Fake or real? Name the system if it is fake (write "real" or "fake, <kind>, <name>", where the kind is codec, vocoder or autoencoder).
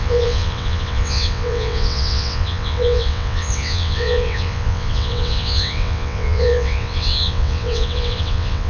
fake, vocoder, WaveNeXt